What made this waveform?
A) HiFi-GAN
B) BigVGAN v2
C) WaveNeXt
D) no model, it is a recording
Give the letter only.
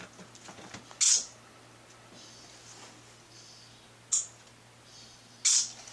D